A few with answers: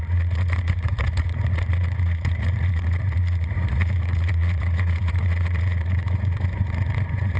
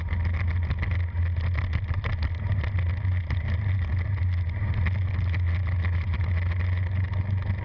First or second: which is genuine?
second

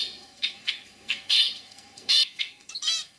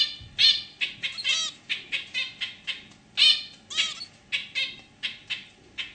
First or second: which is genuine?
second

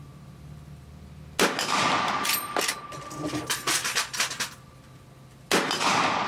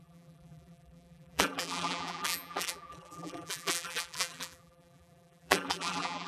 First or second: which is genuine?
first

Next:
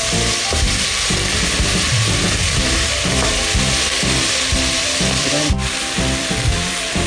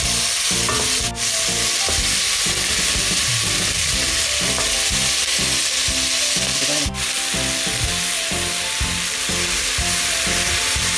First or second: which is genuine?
second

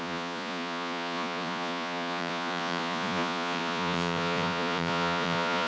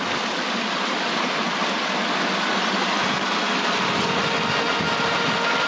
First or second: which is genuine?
second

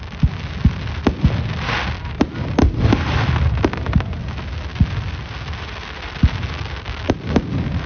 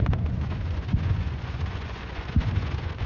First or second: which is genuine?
first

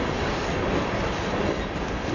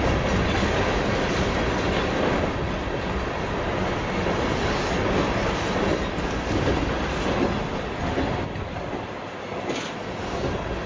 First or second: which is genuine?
second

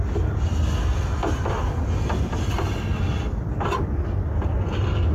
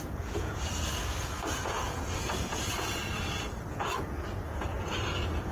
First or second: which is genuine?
first